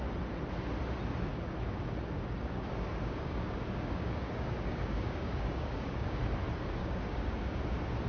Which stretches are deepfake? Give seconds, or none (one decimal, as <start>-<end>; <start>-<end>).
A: 1.3-6.2; 6.8-7.6